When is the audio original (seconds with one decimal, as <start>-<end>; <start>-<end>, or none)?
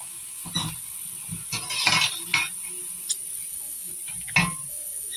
0.4-3.5; 3.9-4.7